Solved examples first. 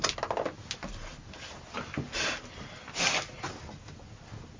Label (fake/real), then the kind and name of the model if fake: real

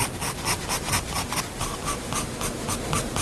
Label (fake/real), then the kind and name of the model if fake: real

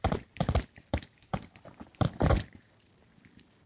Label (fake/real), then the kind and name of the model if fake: fake, vocoder, BigVGAN v2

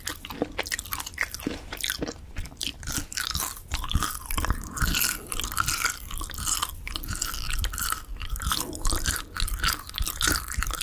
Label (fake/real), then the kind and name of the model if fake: real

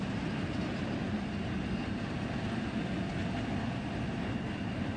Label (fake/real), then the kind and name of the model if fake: real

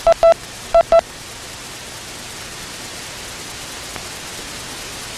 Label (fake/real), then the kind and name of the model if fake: real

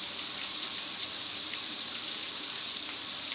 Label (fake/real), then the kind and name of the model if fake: fake, vocoder, BigVGAN v2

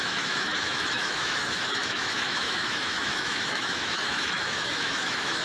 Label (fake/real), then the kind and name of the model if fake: fake, autoencoder, DAC-VAE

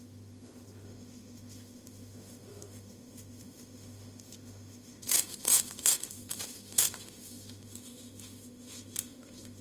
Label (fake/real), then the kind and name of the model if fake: fake, autoencoder, DAC-VAE